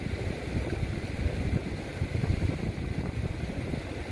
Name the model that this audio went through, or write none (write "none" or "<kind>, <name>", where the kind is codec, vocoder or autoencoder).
none